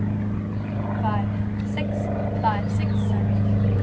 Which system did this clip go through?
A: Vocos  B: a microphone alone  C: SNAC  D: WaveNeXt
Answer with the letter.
B